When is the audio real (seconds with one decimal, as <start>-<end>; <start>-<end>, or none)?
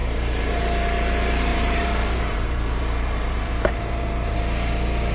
0.6-1.5; 4.4-5.1